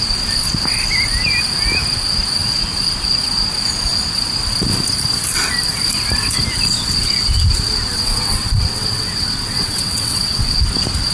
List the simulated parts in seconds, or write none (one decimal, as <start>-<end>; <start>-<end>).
7.9-10.6

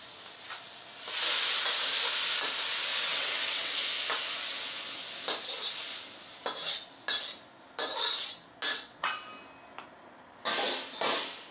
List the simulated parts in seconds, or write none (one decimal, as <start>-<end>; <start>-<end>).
2.9-3.7; 8.7-9.3

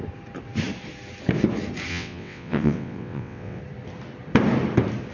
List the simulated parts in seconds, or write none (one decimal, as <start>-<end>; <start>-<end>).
1.9-3.6

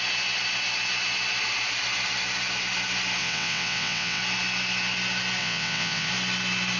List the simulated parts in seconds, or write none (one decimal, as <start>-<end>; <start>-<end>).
3.2-4.2; 5.4-6.1

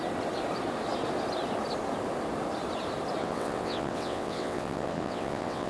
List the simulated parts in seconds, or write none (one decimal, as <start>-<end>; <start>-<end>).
3.2-5.7